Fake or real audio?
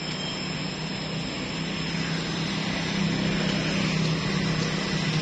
real